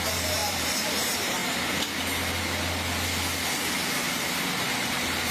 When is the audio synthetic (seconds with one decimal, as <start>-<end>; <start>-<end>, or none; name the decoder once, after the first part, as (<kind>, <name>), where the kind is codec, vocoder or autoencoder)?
0.0-1.4 (vocoder, BigVGAN v2); 4.6-5.3